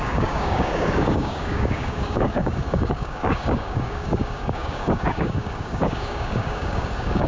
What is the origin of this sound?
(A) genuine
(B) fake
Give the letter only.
B